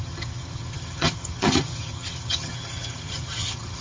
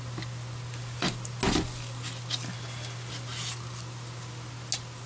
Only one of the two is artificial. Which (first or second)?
first